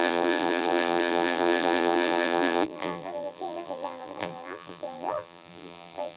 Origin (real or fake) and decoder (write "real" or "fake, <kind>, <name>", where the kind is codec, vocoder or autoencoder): fake, vocoder, BigVGAN v2